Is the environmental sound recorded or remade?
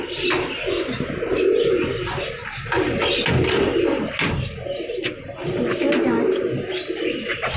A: recorded